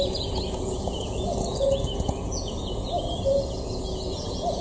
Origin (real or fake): fake